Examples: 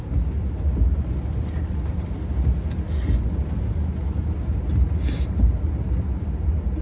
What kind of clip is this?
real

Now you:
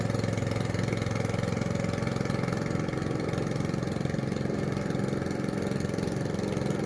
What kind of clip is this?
real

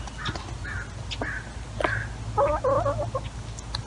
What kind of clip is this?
real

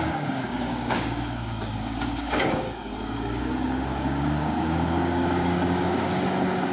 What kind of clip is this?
fake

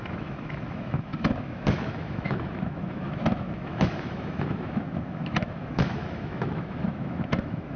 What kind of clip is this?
fake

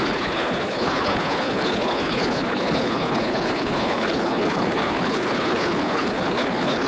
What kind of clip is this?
fake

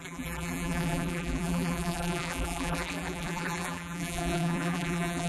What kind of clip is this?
fake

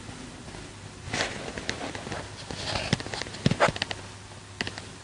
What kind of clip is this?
real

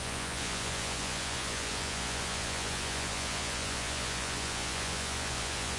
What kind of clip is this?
fake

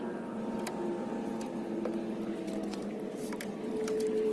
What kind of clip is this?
real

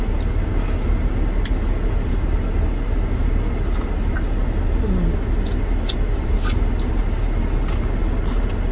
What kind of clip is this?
real